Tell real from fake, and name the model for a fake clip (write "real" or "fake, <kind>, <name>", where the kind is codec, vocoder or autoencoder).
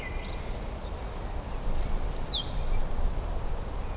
fake, vocoder, BigVGAN v2